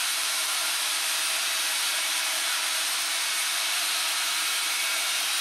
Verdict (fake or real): fake